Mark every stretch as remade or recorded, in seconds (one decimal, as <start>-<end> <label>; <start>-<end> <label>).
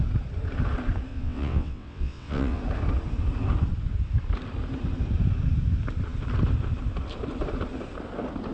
0.0-1.1 recorded; 1.1-2.6 remade; 2.6-8.5 recorded